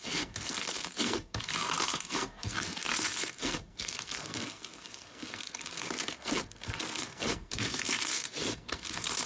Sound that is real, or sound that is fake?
fake